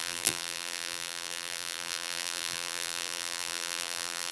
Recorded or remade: remade